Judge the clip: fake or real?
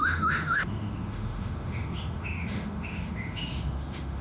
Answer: fake